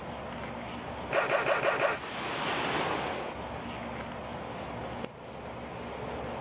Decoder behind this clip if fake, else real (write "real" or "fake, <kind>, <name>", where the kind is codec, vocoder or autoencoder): real